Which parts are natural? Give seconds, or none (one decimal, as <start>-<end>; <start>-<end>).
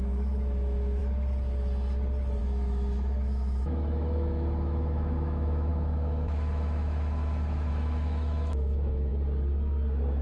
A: 1.0-2.4; 9.1-10.2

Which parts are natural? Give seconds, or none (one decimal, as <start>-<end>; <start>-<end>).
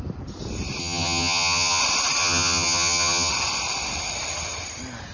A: 0.0-0.8; 1.8-2.2; 3.3-5.1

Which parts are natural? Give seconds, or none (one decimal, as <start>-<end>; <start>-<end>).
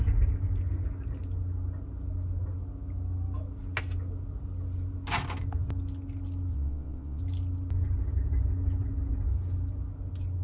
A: 0.0-6.5; 7.2-10.4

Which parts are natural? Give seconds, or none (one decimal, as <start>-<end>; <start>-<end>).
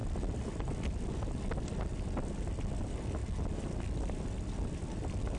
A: 0.0-5.4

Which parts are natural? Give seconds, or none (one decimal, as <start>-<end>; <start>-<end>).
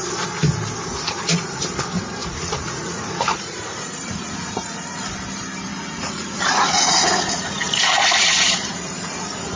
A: 0.0-0.9; 1.6-2.2; 5.0-5.7